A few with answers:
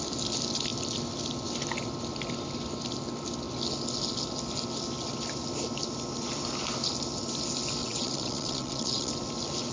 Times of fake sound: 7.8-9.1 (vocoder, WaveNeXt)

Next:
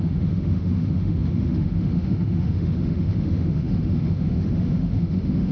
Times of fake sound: 0.0-5.5 (autoencoder, DAC-VAE)

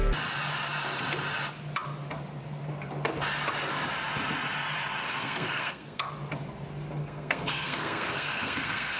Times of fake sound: 5.0-6.1 (codec, SNAC); 7.0-9.0